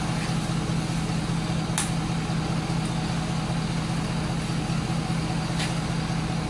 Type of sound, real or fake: real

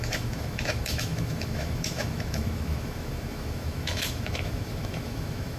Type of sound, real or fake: fake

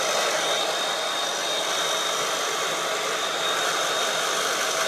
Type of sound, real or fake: real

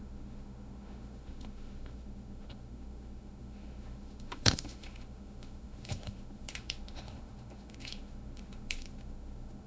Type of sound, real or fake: fake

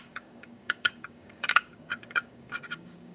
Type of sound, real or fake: fake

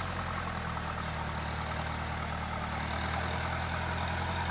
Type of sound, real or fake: real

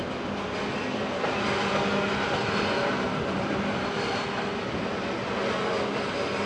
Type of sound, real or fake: real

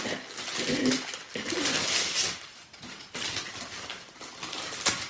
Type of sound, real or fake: real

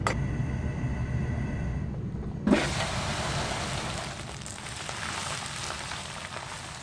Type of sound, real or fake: real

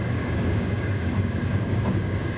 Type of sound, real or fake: fake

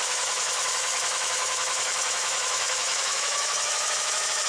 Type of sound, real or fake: fake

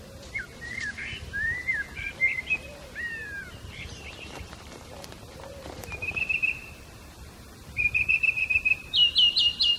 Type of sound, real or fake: fake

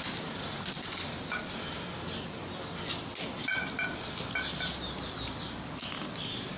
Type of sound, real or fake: real